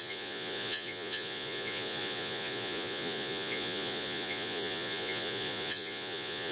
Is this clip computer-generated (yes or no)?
yes